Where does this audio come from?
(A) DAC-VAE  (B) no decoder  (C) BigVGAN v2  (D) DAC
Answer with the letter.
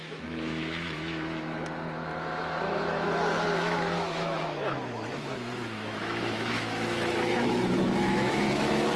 A